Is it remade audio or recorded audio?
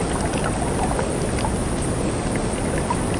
recorded